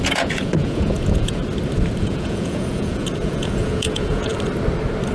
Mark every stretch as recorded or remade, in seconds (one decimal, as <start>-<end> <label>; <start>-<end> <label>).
0.0-1.4 remade; 1.4-2.0 recorded; 2.0-4.3 remade; 4.3-5.1 recorded

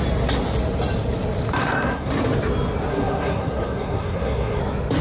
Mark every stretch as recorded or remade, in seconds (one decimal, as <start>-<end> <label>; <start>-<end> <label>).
0.0-1.6 recorded; 1.6-2.1 remade; 2.1-2.9 recorded; 2.9-4.6 remade; 4.6-5.0 recorded

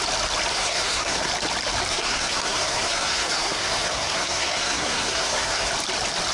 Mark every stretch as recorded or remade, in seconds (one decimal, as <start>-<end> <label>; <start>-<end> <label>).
0.0-0.5 recorded; 0.5-1.3 remade; 1.3-1.9 recorded; 1.9-5.7 remade; 5.7-6.3 recorded

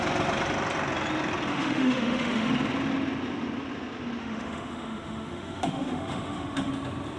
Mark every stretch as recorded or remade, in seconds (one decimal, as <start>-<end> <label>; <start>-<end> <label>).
0.0-1.5 recorded; 1.5-2.5 remade; 2.5-4.2 recorded; 4.2-6.7 remade; 6.7-7.2 recorded

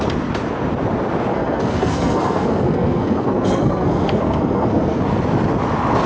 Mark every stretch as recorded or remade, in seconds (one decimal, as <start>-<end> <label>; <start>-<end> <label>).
0.0-1.3 recorded; 1.3-5.0 remade; 5.0-6.1 recorded

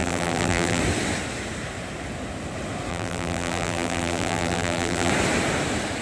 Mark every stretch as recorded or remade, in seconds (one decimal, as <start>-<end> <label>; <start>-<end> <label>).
0.0-0.8 remade; 0.8-2.9 recorded; 2.9-5.1 remade; 5.1-6.0 recorded

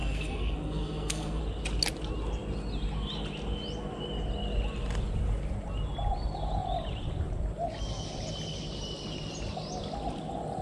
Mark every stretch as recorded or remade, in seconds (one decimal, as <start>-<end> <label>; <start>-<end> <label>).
0.0-1.4 remade; 1.4-10.6 recorded

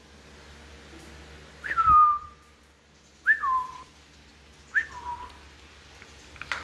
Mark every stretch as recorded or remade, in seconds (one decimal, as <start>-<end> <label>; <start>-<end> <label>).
0.0-6.6 recorded